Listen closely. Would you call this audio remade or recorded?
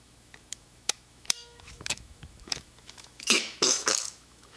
remade